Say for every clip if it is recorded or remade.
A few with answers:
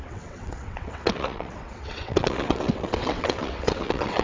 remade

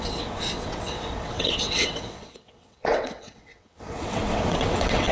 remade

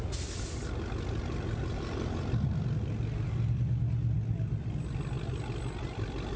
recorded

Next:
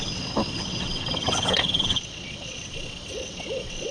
remade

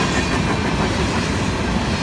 recorded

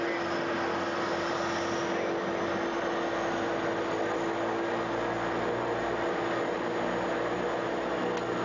recorded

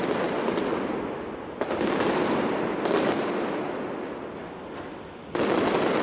recorded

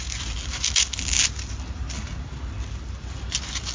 recorded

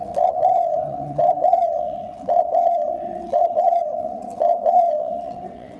remade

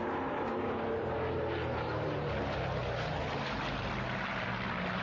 recorded